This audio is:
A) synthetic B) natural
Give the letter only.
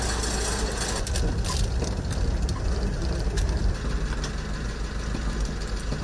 B